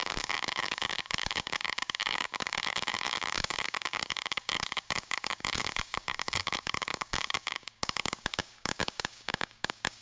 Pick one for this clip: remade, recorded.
remade